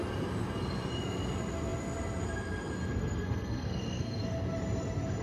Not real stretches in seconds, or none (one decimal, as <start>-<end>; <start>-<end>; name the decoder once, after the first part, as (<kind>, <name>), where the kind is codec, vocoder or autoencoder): 3.0-4.2 (codec, SNAC)